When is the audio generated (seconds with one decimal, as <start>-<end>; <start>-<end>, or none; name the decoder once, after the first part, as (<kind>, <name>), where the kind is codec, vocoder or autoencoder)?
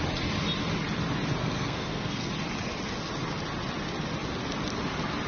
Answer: 1.4-2.3 (codec, SNAC)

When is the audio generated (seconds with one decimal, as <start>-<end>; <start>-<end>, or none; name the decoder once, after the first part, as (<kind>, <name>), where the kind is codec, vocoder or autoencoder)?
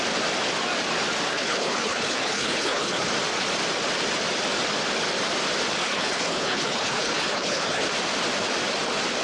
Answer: 1.3-3.1 (codec, HILCodec); 5.8-7.8